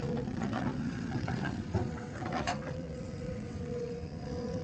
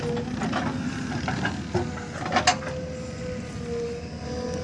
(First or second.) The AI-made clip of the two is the first